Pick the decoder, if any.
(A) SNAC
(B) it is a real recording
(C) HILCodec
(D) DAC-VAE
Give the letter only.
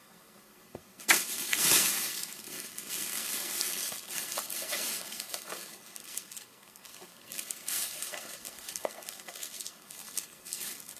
A